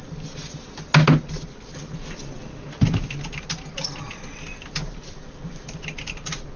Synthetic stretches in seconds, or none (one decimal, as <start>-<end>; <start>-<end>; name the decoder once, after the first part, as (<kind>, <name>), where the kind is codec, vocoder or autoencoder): none